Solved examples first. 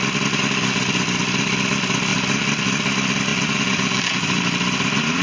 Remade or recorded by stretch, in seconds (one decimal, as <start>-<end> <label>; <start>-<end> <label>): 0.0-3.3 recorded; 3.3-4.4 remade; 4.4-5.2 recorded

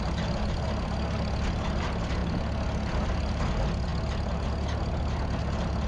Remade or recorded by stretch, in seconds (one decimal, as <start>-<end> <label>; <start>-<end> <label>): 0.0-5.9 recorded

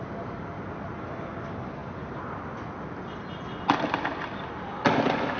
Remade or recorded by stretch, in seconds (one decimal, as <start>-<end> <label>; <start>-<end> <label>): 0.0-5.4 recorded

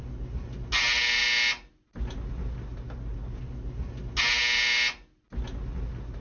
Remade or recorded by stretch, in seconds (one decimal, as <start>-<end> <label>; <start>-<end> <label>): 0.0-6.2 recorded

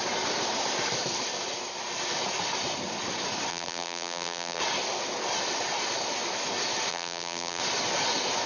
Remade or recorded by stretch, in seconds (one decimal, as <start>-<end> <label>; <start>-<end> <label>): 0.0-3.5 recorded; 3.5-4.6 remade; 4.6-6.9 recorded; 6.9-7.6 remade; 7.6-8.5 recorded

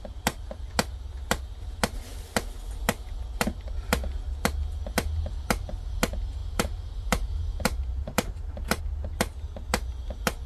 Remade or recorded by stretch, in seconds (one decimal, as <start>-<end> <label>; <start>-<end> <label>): 0.0-6.4 recorded; 6.4-8.8 remade; 8.8-10.5 recorded